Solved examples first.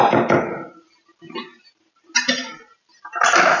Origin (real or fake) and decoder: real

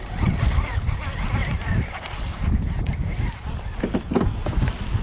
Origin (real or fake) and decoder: real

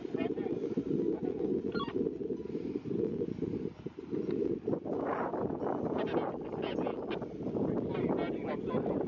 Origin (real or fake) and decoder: real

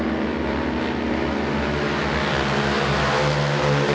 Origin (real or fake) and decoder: real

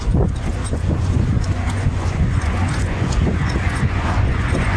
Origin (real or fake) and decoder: fake, vocoder, Vocos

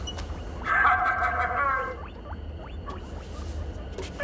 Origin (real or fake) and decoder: real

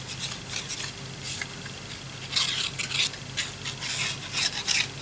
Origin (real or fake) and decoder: real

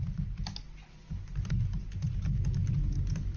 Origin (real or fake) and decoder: real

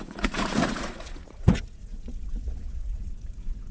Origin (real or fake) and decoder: fake, vocoder, Vocos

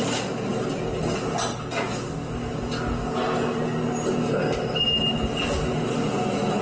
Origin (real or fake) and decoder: real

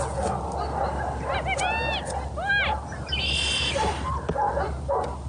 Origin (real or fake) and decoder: real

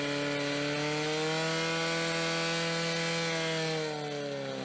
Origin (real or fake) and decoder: real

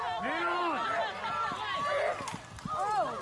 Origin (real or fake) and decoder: real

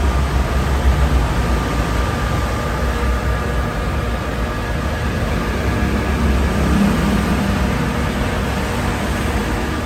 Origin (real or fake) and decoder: real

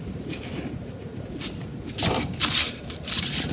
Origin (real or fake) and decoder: real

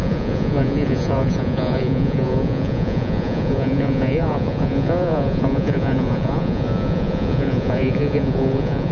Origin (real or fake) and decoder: fake, vocoder, Vocos